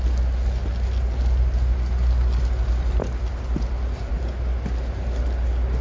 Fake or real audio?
real